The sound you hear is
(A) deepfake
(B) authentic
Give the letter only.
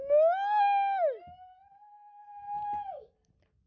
B